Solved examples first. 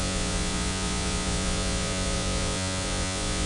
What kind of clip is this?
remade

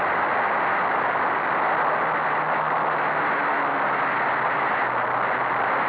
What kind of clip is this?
recorded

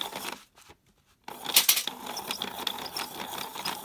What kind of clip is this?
recorded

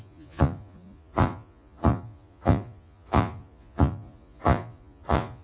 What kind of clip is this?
remade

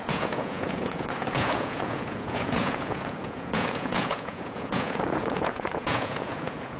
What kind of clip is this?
remade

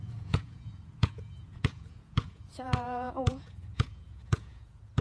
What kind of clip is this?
remade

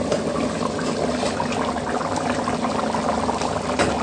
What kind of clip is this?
recorded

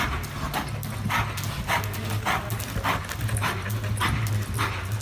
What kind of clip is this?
recorded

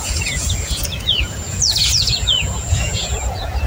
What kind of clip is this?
remade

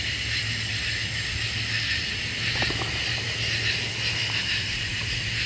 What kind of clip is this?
recorded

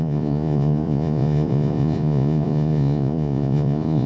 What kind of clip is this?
remade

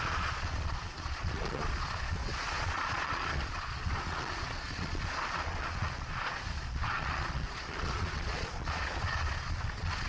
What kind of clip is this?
remade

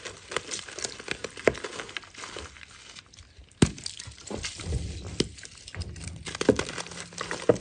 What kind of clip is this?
recorded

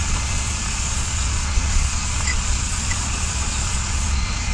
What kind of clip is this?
remade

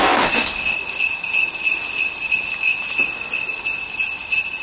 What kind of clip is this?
recorded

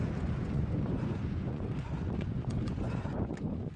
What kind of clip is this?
remade